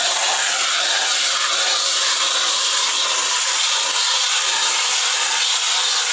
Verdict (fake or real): real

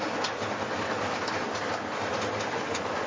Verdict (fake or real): real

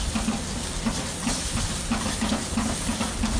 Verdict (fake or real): real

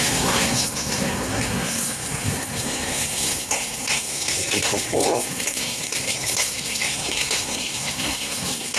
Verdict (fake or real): fake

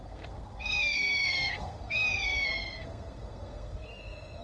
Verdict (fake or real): fake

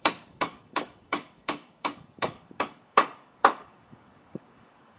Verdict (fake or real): fake